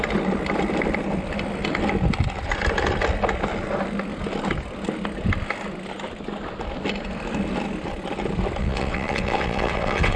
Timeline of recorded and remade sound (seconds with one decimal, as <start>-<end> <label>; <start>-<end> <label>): 0.0-8.6 recorded; 8.6-10.2 remade